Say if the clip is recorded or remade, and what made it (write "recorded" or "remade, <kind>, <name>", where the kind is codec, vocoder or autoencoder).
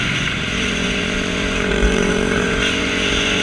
remade, vocoder, Vocos